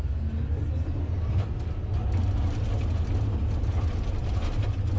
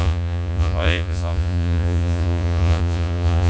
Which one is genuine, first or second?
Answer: first